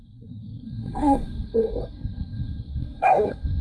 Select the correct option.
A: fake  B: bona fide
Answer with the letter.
A